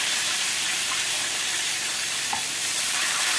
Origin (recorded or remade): remade